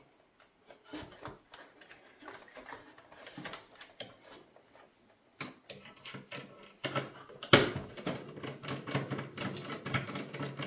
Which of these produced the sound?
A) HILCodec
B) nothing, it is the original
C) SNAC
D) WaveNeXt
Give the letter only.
B